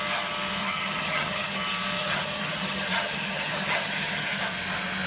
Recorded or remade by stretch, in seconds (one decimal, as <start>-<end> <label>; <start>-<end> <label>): 0.0-0.6 recorded; 0.6-1.6 remade; 1.6-2.0 recorded; 2.0-4.4 remade; 4.4-5.1 recorded